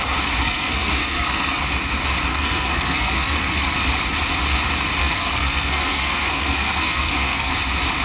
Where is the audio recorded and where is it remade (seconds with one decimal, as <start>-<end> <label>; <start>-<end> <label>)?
0.0-0.4 recorded; 0.4-1.6 remade; 1.6-2.3 recorded; 2.3-3.8 remade; 3.8-5.0 recorded; 5.0-7.5 remade; 7.5-8.0 recorded